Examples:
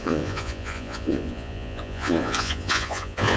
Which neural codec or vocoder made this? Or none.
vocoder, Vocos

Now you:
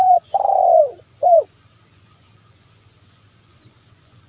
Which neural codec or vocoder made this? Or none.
vocoder, Vocos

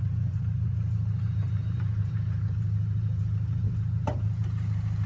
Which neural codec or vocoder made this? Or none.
vocoder, BigVGAN v2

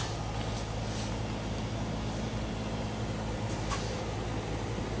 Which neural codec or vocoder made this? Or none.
none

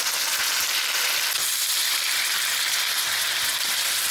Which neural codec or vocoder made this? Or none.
none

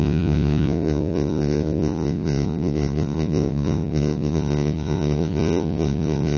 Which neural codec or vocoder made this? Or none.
vocoder, Vocos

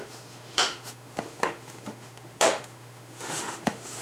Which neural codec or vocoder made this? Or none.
autoencoder, DAC-VAE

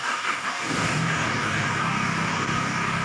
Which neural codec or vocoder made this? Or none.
codec, DAC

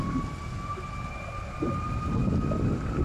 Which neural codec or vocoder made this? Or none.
none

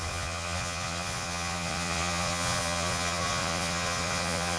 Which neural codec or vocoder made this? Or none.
vocoder, Vocos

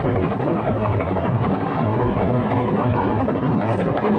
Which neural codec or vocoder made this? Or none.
codec, SNAC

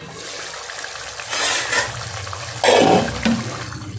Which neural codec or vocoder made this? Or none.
none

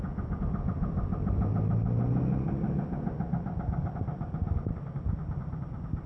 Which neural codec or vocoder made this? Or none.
none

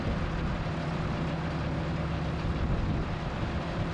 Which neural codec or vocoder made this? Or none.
none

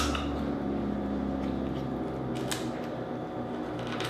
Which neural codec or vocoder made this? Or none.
none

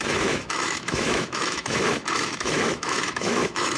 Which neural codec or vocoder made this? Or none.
autoencoder, DAC-VAE